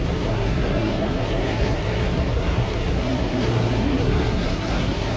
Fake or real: fake